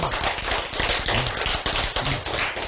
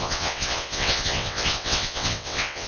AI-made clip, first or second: second